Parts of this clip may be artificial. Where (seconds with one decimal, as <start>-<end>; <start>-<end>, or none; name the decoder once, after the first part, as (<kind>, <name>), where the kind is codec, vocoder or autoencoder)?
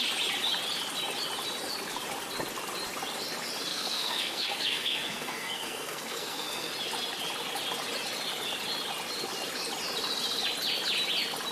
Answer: 3.7-6.7 (codec, SNAC)